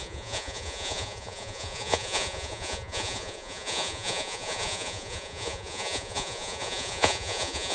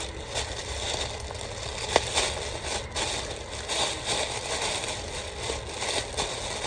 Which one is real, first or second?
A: second